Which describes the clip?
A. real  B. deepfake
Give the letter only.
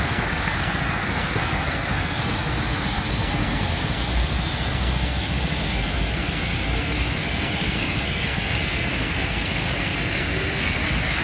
B